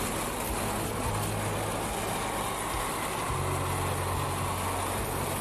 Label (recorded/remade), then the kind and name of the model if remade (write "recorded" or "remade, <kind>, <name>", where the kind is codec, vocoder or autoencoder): recorded